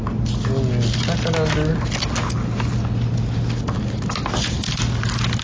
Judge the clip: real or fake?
real